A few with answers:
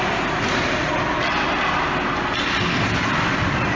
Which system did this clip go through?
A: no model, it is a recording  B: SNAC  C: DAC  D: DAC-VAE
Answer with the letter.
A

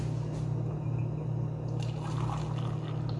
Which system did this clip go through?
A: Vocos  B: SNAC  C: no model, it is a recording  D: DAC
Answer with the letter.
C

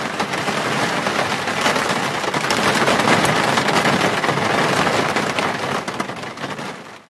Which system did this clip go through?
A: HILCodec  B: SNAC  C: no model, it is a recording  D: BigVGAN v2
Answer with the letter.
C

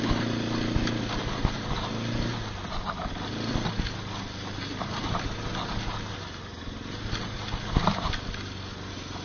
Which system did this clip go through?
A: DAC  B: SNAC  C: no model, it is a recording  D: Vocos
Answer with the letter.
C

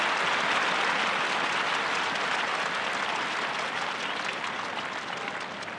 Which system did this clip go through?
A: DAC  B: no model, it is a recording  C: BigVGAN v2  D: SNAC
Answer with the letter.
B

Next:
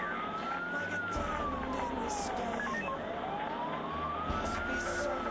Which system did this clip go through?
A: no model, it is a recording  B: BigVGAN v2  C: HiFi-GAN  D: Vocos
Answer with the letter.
A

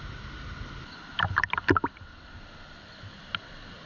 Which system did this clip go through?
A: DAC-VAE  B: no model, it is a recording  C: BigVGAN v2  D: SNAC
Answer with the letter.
B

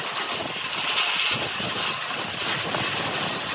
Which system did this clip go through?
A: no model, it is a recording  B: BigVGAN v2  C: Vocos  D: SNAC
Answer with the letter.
A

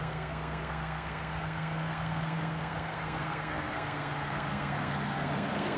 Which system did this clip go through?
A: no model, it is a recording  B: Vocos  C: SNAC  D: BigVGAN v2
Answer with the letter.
C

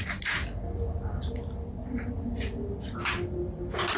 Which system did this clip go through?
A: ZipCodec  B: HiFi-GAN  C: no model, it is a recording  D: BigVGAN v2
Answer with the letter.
C